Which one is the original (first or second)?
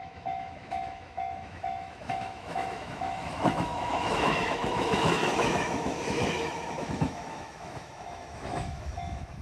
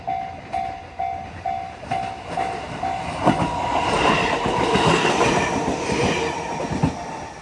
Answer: second